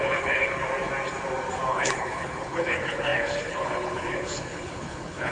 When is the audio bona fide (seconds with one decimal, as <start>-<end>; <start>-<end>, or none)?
0.6-1.7